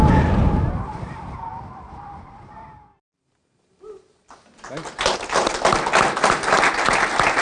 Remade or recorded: recorded